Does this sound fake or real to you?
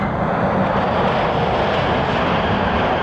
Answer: real